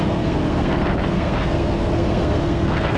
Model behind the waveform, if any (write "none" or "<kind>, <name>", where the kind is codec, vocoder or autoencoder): codec, SNAC